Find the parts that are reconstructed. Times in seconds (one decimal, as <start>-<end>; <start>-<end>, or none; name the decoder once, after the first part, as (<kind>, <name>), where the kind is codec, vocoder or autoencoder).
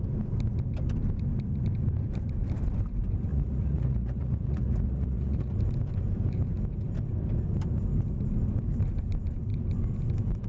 3.3-5.5 (vocoder, Vocos)